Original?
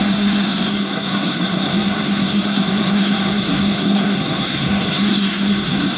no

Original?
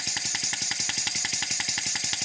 yes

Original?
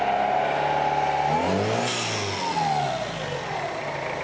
yes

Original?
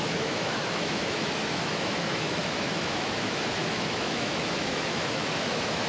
no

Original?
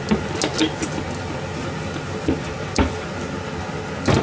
yes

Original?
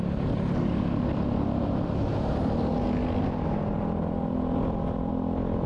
yes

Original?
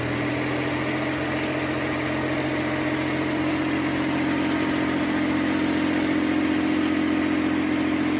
yes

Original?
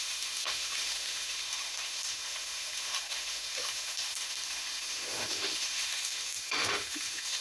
no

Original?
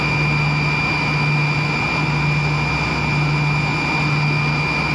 yes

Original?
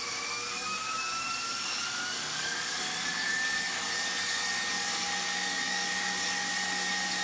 no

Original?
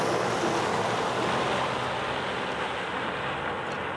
yes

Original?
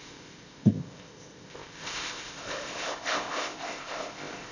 no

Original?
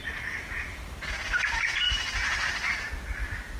yes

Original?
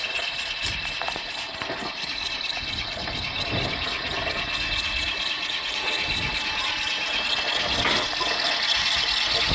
yes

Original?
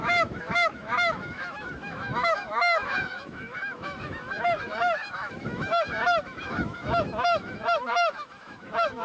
no